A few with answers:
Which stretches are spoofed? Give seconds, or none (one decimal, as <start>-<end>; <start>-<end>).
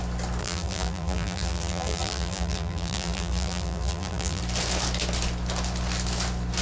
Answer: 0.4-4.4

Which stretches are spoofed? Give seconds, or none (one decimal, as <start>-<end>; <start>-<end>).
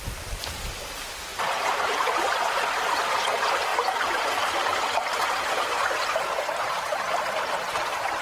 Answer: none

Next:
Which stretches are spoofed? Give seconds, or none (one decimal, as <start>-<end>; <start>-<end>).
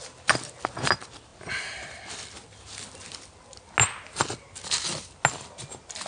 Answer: none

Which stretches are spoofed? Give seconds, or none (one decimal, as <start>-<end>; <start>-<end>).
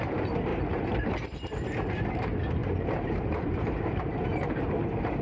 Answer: 0.5-1.1; 2.6-4.7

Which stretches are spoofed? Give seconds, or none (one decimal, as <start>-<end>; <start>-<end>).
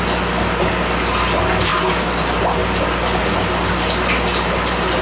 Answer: none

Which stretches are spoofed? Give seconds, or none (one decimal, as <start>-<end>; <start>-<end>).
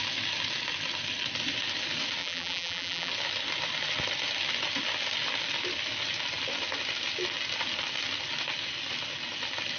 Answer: 2.2-3.1